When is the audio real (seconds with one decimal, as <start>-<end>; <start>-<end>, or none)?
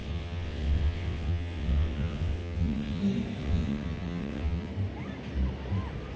3.0-3.4; 4.7-6.2